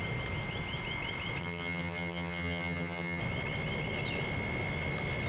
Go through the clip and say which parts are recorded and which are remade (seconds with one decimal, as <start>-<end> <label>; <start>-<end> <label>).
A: 0.0-1.4 recorded; 1.4-3.2 remade; 3.2-5.3 recorded